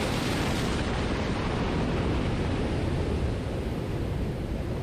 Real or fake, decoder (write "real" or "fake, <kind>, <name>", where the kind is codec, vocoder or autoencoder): real